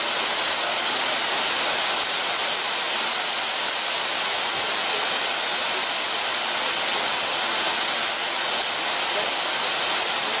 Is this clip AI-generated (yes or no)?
no